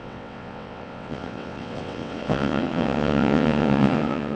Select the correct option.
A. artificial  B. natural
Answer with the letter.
A